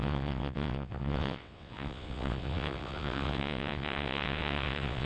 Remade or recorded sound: remade